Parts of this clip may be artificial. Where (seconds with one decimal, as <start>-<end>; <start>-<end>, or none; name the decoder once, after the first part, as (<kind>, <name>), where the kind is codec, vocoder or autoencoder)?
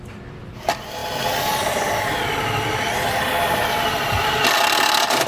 none